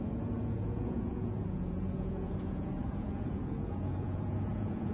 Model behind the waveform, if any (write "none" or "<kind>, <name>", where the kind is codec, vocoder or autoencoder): vocoder, Vocos